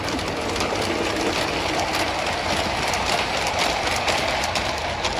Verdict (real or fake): real